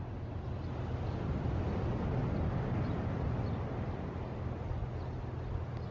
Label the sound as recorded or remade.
recorded